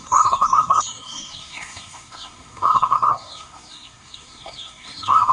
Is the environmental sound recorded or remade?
remade